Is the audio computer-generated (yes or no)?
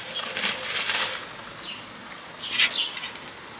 no